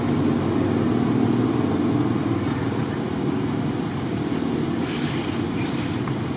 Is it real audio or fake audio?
real